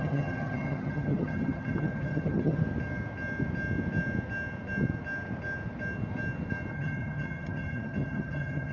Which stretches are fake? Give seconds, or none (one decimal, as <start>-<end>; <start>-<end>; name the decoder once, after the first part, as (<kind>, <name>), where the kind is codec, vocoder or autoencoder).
0.0-2.6 (vocoder, HiFi-GAN); 6.7-8.7